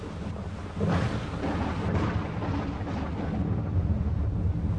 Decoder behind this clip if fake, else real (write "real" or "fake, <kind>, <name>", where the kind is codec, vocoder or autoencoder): real